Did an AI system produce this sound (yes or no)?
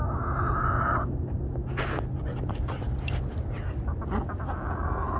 no